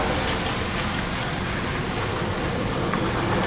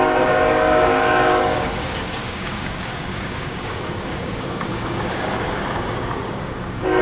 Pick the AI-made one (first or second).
second